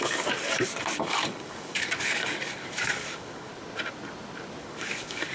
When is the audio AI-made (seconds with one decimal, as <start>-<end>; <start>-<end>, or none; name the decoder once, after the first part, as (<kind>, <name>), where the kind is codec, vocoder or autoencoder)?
0.0-3.5 (codec, DAC); 4.6-5.3